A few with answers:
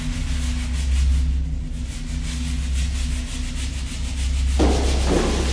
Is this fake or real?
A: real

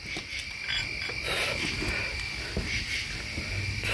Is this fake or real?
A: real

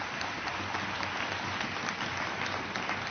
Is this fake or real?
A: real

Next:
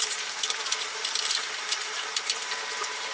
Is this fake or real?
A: fake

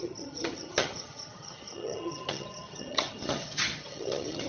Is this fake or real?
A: fake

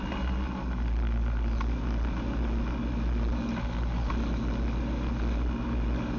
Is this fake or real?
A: real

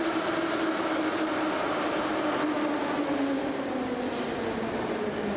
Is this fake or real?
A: real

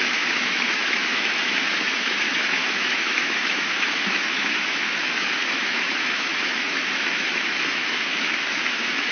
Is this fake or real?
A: fake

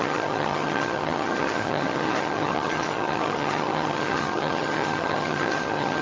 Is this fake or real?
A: fake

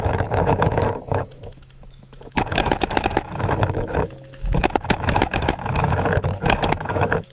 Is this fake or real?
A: fake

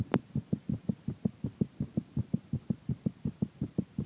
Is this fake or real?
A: real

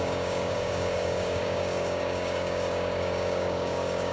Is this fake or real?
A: fake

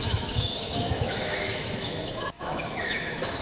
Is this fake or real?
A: fake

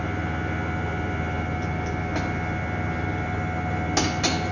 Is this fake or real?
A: real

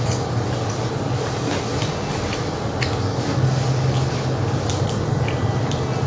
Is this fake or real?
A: real